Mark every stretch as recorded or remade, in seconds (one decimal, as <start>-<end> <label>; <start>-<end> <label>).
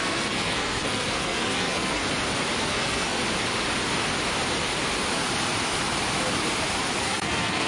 0.0-2.0 remade; 2.0-2.6 recorded; 2.6-3.2 remade; 3.2-7.0 recorded; 7.0-7.7 remade